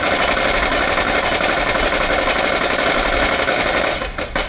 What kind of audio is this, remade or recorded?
recorded